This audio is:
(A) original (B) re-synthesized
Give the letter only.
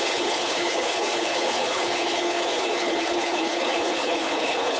B